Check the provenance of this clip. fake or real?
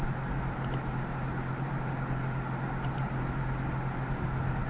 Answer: real